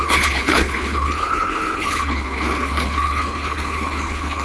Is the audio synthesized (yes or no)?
yes